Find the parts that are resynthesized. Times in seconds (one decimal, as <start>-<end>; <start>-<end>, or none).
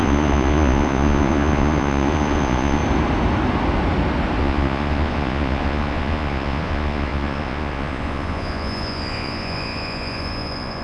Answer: 0.0-2.8; 4.4-10.8